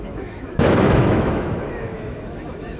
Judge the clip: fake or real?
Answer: fake